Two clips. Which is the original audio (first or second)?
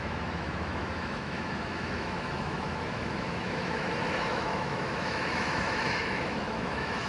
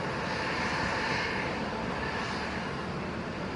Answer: second